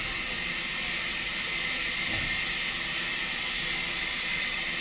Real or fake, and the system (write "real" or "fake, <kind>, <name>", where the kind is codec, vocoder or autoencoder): real